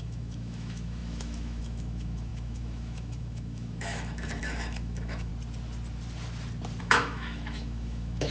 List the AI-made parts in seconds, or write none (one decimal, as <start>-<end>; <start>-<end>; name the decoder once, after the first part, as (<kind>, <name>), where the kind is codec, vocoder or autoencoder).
0.0-5.3 (autoencoder, DAC-VAE); 6.8-8.3